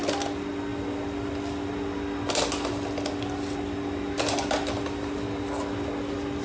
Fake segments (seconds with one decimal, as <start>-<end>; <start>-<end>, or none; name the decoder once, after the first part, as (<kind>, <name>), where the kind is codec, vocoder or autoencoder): none